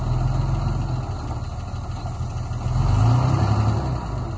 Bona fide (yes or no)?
yes